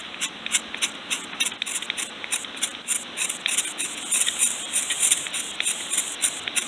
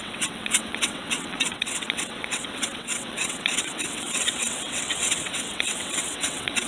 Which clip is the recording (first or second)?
first